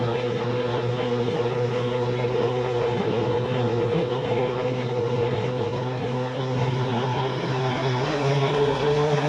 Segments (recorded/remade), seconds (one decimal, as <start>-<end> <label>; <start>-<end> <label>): 0.0-9.3 remade